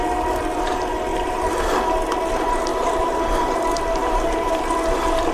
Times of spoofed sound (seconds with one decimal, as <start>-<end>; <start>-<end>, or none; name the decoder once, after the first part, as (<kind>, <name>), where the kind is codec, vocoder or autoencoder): 1.1-1.7 (vocoder, BigVGAN v2); 2.7-4.5